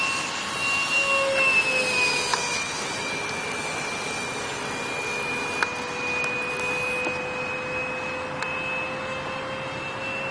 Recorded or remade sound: recorded